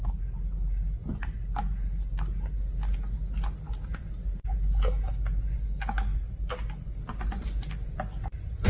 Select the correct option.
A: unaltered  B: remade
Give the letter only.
A